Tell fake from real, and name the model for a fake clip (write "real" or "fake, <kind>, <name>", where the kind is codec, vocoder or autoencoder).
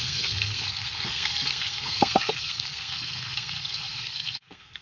fake, codec, SNAC